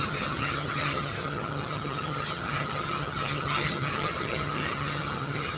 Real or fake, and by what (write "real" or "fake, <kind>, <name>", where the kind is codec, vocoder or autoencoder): fake, vocoder, HiFi-GAN